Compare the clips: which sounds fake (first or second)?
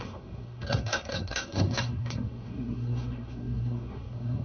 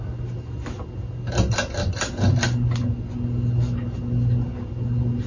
first